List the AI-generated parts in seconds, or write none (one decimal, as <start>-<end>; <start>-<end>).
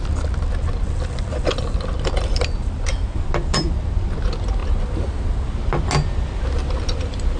none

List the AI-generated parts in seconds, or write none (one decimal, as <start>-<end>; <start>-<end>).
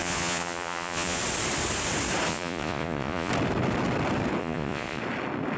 0.0-1.2; 2.3-3.3; 4.4-5.0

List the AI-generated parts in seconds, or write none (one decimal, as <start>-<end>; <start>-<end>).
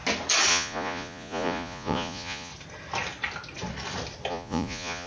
0.5-2.5; 4.3-5.1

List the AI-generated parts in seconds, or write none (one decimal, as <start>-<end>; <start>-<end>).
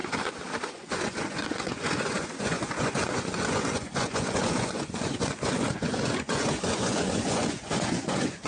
0.7-8.5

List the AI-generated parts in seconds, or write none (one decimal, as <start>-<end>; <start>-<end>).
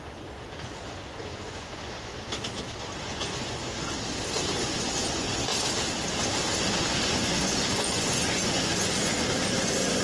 0.0-2.1; 3.0-3.7; 4.5-5.5; 6.8-10.0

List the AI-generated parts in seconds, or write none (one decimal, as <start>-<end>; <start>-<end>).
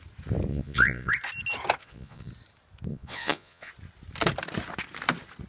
0.5-1.1; 1.8-2.3; 2.9-3.7